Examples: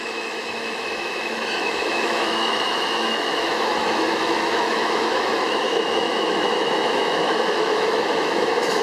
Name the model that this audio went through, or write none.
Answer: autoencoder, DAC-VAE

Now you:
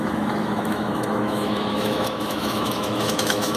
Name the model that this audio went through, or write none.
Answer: autoencoder, DAC-VAE